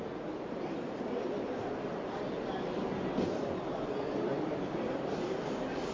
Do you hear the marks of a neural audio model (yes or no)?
no